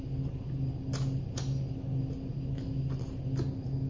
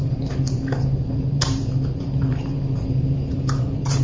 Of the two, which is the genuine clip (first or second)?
first